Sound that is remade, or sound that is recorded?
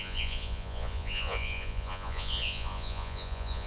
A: remade